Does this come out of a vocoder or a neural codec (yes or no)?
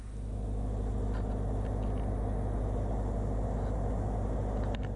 no